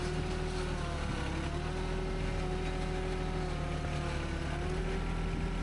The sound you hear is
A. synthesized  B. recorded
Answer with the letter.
B